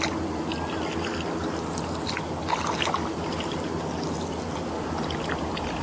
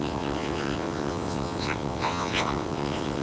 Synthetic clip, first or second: second